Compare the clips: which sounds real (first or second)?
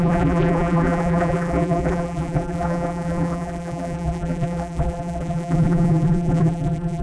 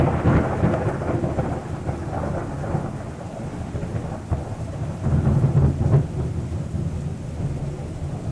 second